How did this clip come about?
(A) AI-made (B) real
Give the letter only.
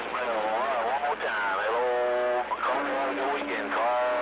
B